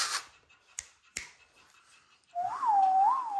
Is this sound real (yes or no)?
yes